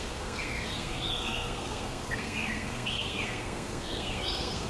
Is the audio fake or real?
fake